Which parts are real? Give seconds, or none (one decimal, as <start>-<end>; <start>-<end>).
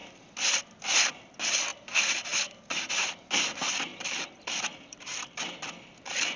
0.6-1.7; 2.9-3.9; 5.5-6.4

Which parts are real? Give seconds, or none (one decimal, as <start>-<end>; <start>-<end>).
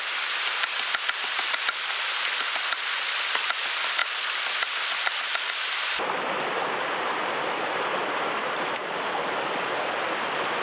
0.0-10.6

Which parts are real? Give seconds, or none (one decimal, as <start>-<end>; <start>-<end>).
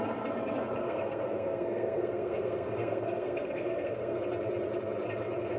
0.0-0.8; 4.2-5.6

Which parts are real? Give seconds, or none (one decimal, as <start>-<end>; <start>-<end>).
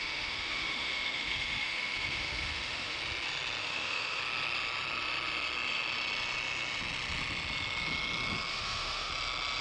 3.0-3.6; 4.2-8.5; 9.1-9.6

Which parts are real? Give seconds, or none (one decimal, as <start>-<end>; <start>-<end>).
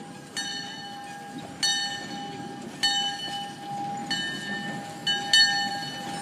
0.0-6.2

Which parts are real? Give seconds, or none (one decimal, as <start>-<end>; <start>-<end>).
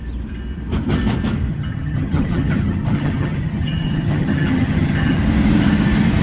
0.0-1.5; 5.2-6.2